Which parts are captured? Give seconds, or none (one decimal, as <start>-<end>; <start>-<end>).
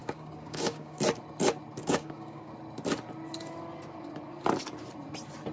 1.0-1.8; 2.5-5.5